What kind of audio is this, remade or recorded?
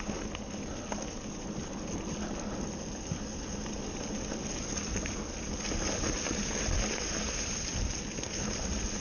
recorded